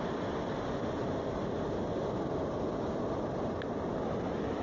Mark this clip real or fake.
real